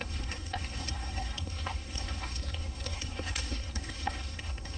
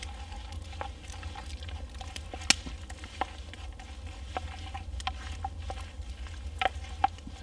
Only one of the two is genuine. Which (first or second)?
second